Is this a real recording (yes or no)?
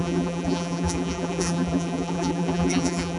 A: no